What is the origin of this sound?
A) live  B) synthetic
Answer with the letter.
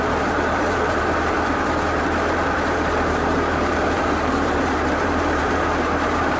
B